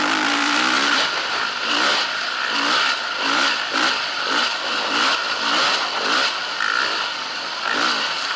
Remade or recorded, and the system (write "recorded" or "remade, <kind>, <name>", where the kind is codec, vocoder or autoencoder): recorded